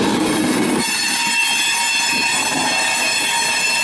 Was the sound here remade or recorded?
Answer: recorded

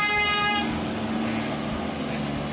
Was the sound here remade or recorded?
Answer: recorded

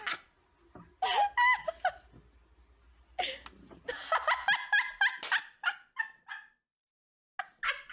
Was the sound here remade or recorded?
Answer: recorded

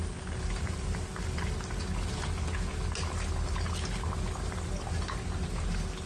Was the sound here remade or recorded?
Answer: recorded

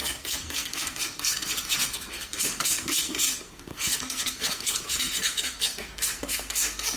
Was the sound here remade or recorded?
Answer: remade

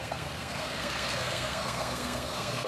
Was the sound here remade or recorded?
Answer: remade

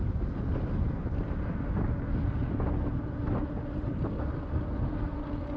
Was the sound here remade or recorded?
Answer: recorded